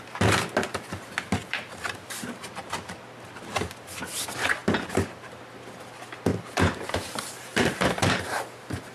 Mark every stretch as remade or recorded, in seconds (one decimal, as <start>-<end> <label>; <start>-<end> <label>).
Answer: 0.0-1.4 recorded; 1.4-2.7 remade; 2.7-4.6 recorded; 4.6-5.3 remade; 5.3-6.3 recorded; 6.3-8.4 remade; 8.4-8.9 recorded